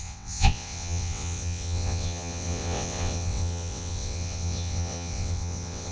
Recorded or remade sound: remade